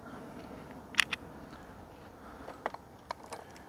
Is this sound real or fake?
fake